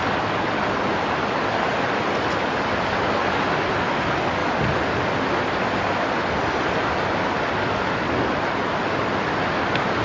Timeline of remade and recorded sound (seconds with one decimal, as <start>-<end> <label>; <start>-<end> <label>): 0.0-10.0 recorded